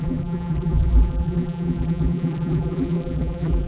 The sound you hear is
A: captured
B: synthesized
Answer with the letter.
B